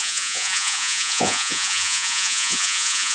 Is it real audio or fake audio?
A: fake